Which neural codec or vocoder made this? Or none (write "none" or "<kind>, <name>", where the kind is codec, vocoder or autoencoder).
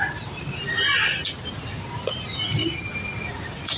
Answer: none